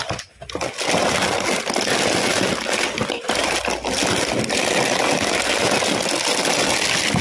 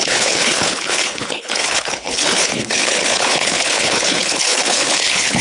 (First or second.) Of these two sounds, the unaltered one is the first